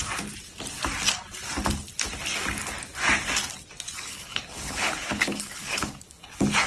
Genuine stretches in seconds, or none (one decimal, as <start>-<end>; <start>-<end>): 0.0-4.0